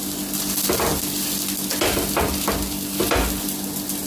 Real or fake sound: real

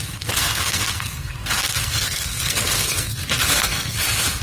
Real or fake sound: fake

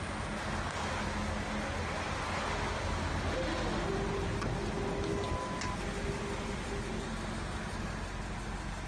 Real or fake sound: real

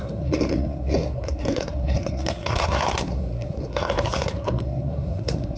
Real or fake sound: fake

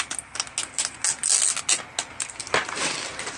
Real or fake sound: real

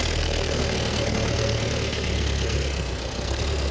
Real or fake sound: fake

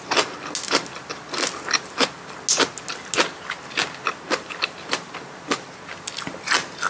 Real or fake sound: real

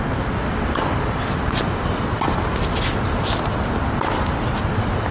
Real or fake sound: real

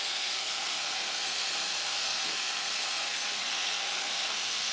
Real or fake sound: fake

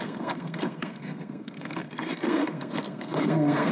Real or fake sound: fake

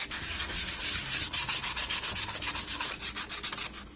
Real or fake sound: real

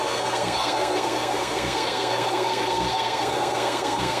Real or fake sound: fake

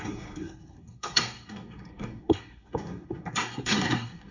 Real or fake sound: fake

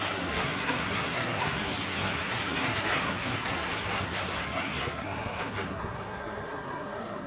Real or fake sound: fake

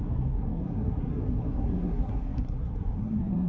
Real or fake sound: fake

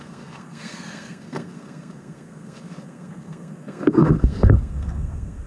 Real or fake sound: fake